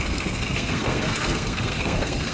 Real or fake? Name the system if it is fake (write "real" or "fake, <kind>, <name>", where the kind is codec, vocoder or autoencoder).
fake, codec, SNAC